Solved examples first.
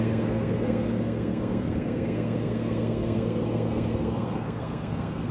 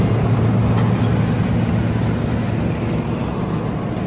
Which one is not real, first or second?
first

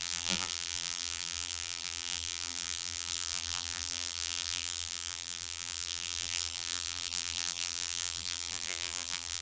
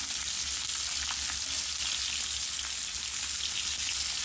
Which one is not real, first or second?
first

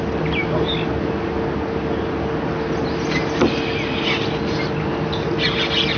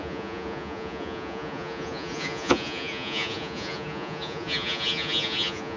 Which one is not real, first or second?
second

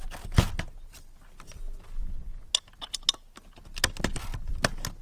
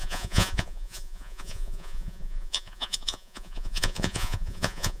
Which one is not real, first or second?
second